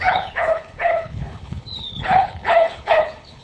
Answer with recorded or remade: remade